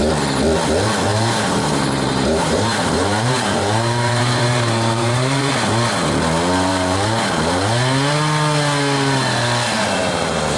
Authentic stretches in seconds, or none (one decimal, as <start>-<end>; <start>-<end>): 0.0-1.1; 5.5-6.7; 7.6-10.6